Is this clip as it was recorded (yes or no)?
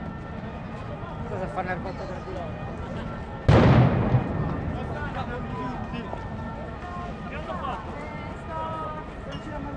yes